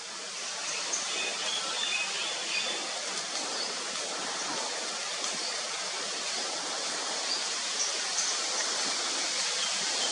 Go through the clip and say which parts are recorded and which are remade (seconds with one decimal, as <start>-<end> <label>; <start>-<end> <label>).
0.0-10.1 recorded